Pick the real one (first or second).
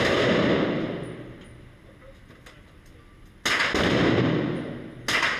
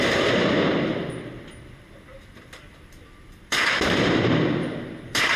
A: first